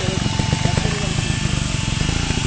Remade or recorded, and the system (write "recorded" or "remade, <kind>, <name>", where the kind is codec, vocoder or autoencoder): recorded